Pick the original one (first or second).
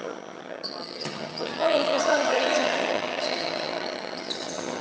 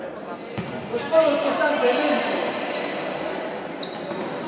second